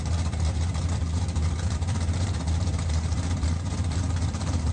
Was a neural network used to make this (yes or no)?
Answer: yes